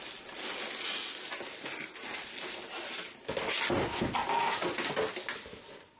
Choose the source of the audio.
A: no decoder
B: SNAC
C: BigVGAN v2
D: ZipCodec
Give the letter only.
A